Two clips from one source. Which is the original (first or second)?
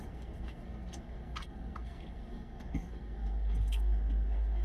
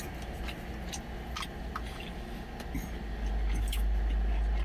second